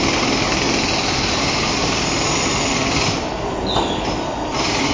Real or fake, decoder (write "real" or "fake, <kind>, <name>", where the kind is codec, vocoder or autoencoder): real